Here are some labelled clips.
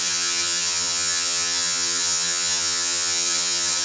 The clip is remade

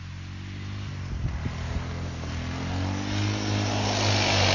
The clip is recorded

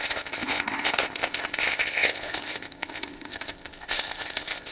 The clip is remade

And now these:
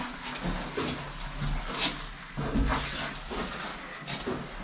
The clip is recorded